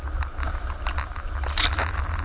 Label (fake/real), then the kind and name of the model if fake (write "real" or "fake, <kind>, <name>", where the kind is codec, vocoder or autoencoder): real